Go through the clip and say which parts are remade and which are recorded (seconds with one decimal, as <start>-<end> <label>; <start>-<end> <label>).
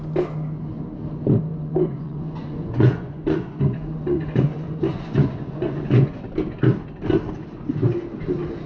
0.0-1.5 recorded; 1.5-6.2 remade; 6.2-8.7 recorded